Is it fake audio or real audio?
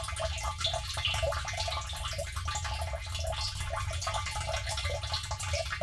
real